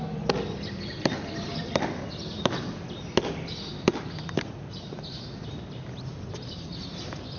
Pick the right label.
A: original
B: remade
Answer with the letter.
A